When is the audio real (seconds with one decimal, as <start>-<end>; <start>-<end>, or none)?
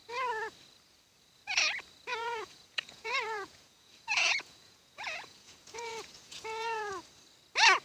0.0-2.2; 6.9-7.8